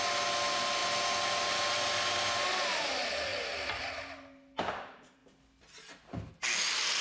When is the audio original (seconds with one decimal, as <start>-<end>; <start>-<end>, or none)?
0.0-7.0